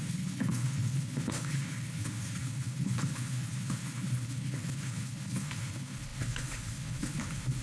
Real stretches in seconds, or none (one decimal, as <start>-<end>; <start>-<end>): none